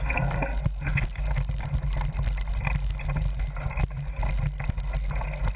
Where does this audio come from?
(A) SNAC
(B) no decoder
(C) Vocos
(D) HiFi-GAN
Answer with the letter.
B